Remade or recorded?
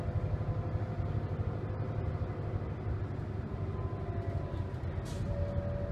recorded